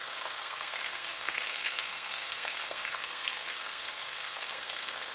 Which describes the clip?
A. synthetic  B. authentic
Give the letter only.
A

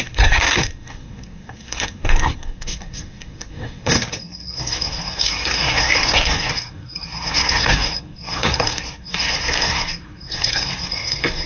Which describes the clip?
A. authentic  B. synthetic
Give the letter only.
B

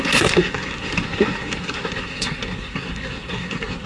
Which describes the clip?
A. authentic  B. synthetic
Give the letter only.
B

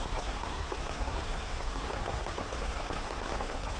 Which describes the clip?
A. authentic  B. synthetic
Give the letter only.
B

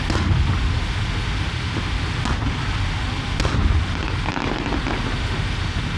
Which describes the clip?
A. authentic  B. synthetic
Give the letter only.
A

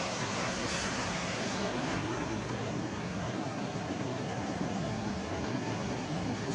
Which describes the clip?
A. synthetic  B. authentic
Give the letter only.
A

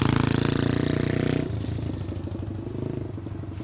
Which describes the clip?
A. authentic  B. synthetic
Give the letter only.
A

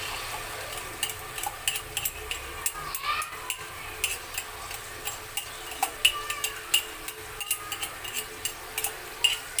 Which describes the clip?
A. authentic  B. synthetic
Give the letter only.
A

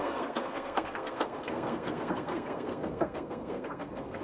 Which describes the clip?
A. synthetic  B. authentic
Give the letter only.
A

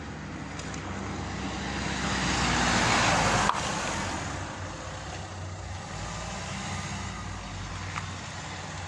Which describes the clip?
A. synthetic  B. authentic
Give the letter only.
B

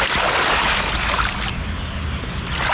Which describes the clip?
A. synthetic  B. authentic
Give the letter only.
B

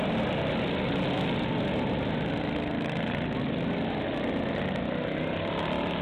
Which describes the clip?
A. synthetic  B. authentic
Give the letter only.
B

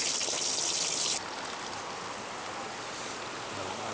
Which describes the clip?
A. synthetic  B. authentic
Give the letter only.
B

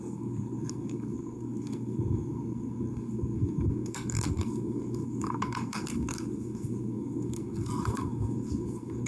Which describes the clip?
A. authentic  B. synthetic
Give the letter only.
B